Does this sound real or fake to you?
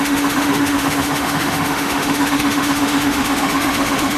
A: fake